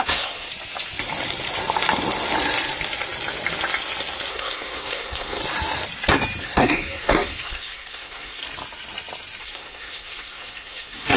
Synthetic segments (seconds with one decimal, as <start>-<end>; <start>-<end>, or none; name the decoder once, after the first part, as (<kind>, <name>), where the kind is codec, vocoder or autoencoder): 0.0-0.5 (codec, SNAC); 4.3-5.4; 6.4-8.4; 9.4-11.2